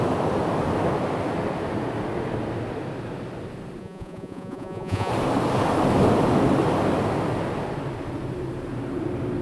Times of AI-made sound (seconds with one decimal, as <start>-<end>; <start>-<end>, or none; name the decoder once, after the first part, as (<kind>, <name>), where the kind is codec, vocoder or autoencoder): 3.8-5.1 (vocoder, Vocos)

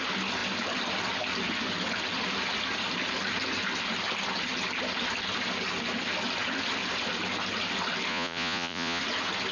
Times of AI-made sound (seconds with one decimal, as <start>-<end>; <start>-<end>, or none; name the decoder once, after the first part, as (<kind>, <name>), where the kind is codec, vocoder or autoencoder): 8.1-9.0 (vocoder, Vocos)

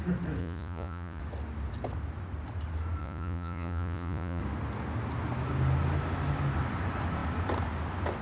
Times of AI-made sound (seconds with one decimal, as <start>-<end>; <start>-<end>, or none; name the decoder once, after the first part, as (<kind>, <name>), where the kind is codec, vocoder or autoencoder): 0.4-1.2 (vocoder, Vocos); 3.0-4.4

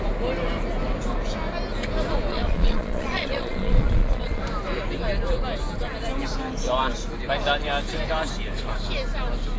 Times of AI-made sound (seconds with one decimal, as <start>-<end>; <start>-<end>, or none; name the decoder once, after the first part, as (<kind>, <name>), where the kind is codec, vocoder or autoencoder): 2.3-4.4 (vocoder, Vocos)

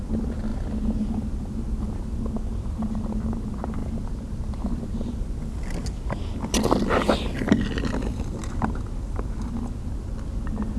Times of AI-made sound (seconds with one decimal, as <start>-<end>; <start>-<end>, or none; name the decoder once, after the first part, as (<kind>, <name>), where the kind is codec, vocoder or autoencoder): none

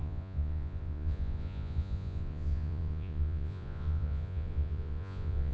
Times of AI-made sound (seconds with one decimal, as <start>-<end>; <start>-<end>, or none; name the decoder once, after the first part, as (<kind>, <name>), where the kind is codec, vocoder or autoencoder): 0.0-5.5 (vocoder, Vocos)

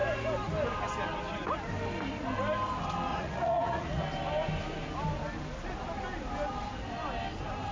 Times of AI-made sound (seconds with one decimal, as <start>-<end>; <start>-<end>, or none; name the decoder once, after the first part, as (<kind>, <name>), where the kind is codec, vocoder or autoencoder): 3.1-4.0 (vocoder, Vocos)